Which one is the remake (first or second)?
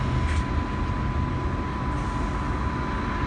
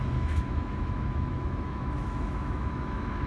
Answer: second